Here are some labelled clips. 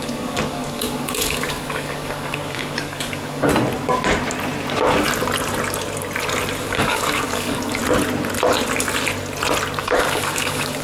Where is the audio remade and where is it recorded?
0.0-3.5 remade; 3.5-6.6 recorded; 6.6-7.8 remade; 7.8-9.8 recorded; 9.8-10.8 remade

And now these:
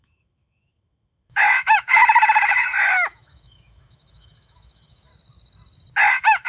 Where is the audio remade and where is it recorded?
0.0-2.0 remade; 2.0-2.9 recorded; 2.9-5.1 remade; 5.1-6.1 recorded; 6.1-6.5 remade

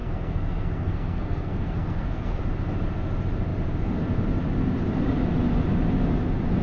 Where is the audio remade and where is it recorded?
0.0-2.4 remade; 2.4-6.6 recorded

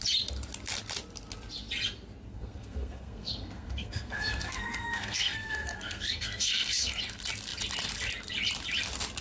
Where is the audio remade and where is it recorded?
0.0-2.3 recorded; 2.3-7.0 remade; 7.0-9.2 recorded

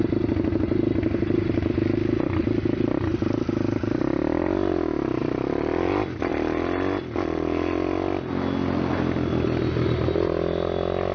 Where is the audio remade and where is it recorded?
0.0-11.1 recorded

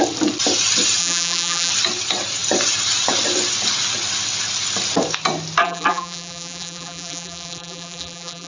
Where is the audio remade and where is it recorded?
0.0-1.0 recorded; 1.0-1.7 remade; 1.7-5.6 recorded; 5.6-8.5 remade